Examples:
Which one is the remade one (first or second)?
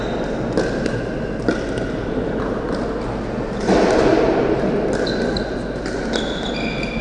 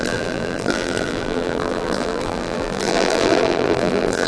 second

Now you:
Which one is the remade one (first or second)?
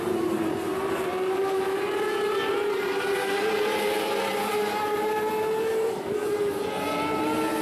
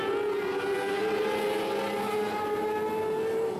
first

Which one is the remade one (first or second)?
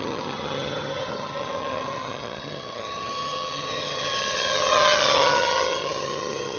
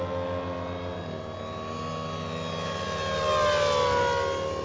first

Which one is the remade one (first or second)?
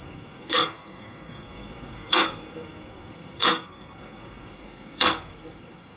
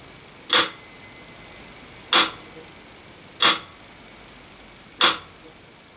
first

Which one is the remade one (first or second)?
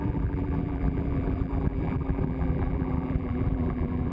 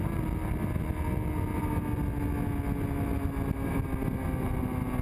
first